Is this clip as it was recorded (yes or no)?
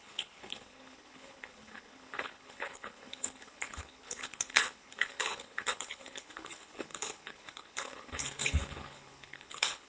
no